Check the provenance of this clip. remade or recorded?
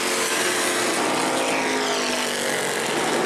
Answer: recorded